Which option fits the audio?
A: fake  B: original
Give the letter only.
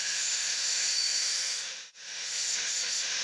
A